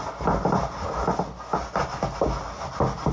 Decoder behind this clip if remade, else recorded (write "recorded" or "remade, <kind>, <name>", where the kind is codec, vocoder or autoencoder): recorded